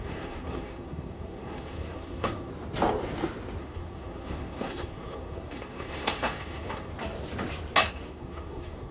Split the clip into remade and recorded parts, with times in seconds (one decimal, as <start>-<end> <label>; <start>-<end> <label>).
0.0-2.5 remade; 2.5-3.6 recorded; 3.6-6.9 remade; 6.9-7.9 recorded; 7.9-8.9 remade